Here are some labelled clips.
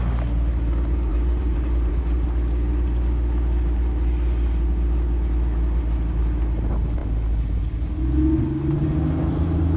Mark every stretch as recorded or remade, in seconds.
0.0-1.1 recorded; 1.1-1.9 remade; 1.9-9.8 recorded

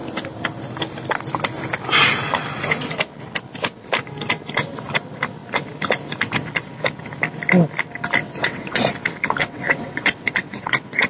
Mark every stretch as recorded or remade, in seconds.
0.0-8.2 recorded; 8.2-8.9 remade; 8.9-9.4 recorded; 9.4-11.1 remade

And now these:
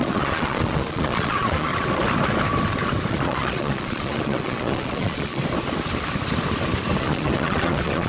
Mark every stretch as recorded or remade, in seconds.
0.0-1.7 remade; 1.7-3.1 recorded; 3.1-5.4 remade; 5.4-7.0 recorded; 7.0-8.1 remade